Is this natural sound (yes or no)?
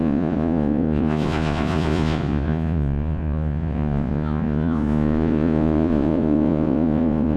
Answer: no